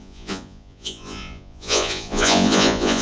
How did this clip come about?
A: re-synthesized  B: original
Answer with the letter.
A